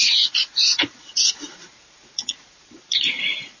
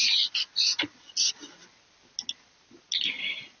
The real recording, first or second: second